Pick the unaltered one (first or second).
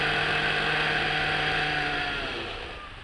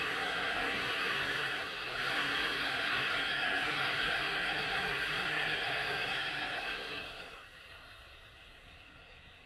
first